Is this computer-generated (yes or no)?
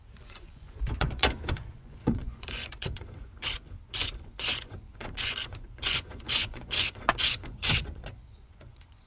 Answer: yes